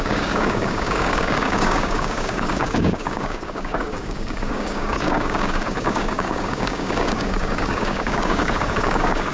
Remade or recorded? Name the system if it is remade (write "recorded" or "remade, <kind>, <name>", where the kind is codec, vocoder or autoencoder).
remade, codec, DAC